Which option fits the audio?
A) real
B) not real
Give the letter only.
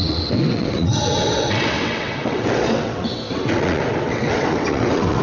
B